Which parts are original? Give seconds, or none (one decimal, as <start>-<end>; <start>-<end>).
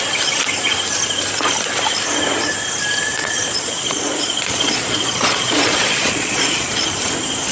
0.0-3.2; 6.7-7.5